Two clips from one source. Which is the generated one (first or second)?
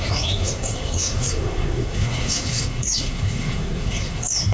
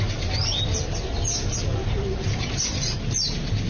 first